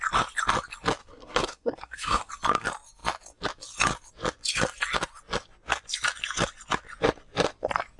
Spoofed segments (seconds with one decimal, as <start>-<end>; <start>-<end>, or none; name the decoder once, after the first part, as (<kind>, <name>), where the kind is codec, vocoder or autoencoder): 1.0-2.3 (codec, SNAC)